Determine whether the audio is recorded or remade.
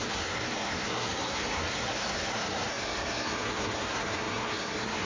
remade